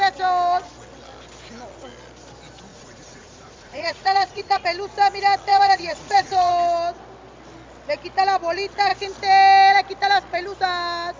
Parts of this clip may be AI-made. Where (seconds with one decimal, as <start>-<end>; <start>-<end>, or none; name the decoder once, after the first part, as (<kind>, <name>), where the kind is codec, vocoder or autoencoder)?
2.7-4.6 (vocoder, Vocos); 5.5-6.5